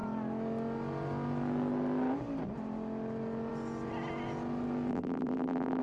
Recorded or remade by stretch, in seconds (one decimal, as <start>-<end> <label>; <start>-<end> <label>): 0.0-4.9 recorded; 4.9-5.8 remade